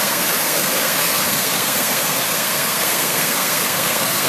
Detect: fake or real fake